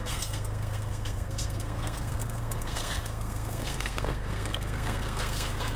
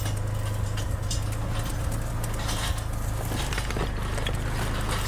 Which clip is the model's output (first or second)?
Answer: first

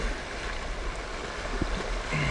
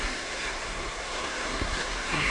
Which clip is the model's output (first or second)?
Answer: second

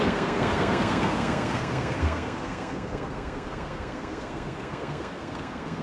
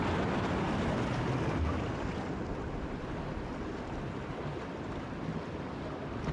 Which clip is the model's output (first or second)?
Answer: first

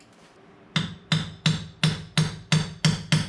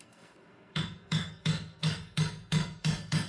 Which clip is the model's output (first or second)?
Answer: second